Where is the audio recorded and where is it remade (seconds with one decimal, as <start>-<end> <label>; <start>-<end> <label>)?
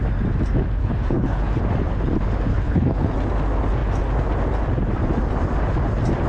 0.0-0.8 recorded; 0.8-1.6 remade; 1.6-2.5 recorded; 2.5-3.1 remade; 3.1-6.3 recorded